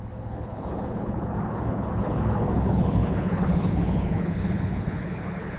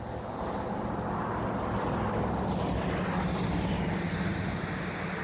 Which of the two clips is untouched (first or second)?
second